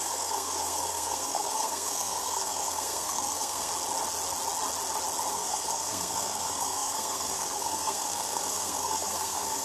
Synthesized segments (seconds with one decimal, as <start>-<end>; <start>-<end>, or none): 0.0-3.7; 5.3-9.6